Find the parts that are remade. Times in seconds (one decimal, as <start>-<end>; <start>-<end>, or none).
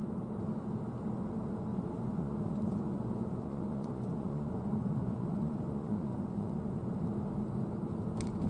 1.7-6.8